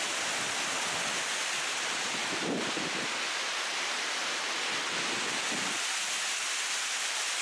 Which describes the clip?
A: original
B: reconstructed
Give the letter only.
A